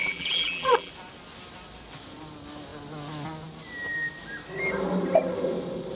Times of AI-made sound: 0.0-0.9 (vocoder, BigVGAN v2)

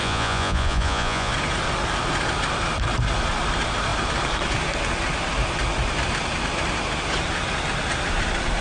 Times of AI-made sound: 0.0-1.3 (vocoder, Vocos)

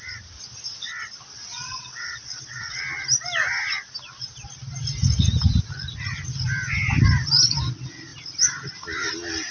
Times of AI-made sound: 1.3-2.8 (vocoder, WaveNeXt)

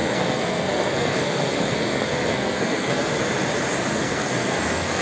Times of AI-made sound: 0.0-3.0 (codec, SNAC); 3.9-5.0